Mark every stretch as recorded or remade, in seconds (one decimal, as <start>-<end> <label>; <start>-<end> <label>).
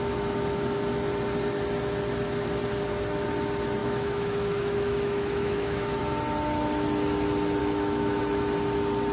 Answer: 0.0-3.8 recorded; 3.8-6.0 remade; 6.0-7.6 recorded; 7.6-8.2 remade; 8.2-9.1 recorded